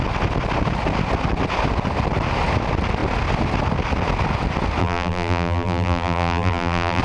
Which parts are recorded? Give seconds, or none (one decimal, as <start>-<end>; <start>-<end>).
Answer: 0.0-4.8